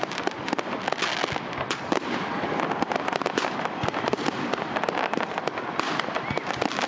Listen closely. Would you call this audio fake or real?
real